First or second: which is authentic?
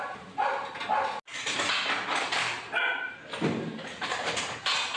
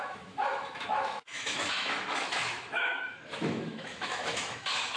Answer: first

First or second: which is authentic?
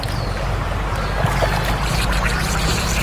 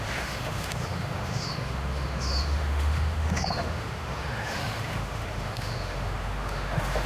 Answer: first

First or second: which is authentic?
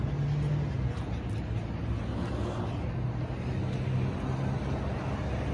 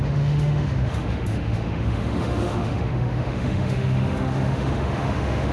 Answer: first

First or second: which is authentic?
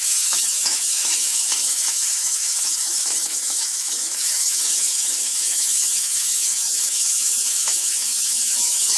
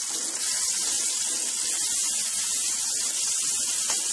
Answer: second